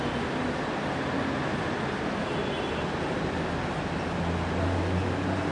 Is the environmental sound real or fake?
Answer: real